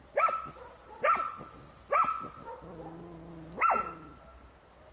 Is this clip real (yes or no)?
yes